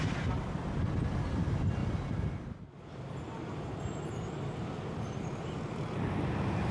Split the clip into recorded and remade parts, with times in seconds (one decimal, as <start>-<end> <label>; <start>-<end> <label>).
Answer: 0.0-1.8 recorded; 1.8-2.9 remade; 2.9-6.7 recorded